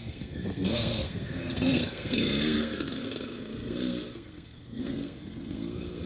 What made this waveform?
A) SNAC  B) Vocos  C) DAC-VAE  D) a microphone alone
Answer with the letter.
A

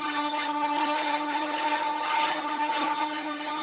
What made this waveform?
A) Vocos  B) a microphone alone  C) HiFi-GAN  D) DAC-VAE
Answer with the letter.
C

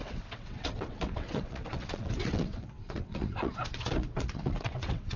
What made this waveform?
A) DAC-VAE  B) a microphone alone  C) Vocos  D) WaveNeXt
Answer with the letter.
D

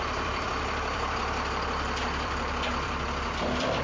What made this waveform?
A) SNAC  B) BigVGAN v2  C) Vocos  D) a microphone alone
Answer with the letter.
B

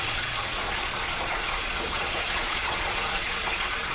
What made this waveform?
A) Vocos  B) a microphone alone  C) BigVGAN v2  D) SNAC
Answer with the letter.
A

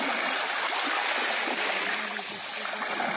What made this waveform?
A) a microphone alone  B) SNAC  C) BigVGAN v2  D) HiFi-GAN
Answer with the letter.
A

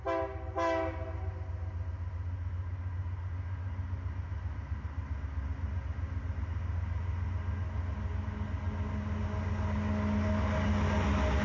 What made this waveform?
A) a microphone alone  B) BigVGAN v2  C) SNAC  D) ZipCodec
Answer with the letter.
A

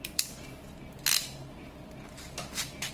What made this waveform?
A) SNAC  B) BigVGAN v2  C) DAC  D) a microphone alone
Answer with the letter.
D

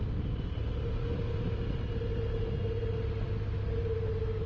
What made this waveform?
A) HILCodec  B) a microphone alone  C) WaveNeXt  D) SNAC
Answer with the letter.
B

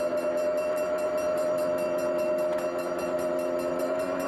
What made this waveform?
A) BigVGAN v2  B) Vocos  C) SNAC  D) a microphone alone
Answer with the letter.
D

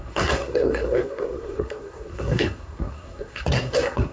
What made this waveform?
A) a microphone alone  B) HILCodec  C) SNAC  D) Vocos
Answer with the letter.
C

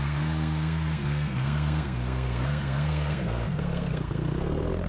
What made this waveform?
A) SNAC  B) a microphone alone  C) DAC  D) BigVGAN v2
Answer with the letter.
A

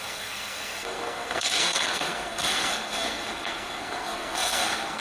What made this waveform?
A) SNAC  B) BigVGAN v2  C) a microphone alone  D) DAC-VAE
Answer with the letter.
A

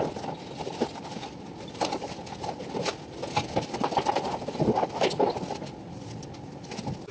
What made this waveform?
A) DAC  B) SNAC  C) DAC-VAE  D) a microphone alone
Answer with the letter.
D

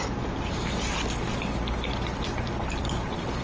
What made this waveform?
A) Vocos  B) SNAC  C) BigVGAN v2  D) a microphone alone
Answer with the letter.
D